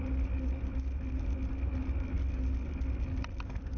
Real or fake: real